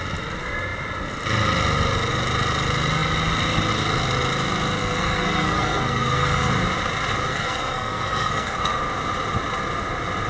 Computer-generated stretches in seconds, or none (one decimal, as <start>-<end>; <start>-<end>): 4.8-6.5; 7.3-8.8